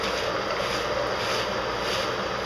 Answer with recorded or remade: recorded